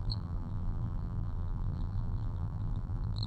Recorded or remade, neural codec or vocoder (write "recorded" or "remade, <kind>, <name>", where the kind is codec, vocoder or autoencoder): remade, vocoder, BigVGAN v2